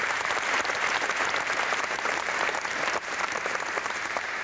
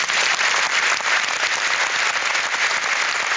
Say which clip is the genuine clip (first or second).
second